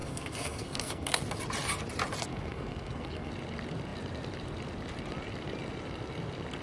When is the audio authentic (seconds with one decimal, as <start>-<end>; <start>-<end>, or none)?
1.2-2.3; 3.3-6.6